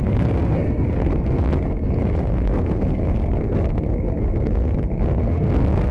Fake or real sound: fake